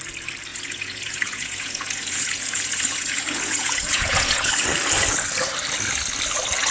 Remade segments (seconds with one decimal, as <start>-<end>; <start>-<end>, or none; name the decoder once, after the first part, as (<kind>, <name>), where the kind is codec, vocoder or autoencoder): 0.5-4.5 (vocoder, Vocos)